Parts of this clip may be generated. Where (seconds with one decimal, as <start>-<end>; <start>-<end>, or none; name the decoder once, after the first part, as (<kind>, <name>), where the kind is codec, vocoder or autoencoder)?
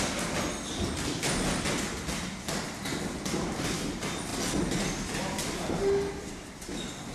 none